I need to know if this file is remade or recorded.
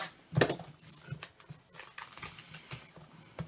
recorded